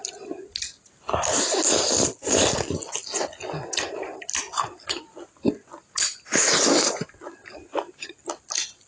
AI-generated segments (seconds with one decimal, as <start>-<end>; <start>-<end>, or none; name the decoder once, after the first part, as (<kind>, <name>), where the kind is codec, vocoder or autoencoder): none